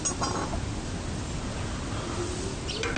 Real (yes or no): yes